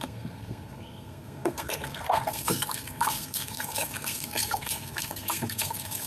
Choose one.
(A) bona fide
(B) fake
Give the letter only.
B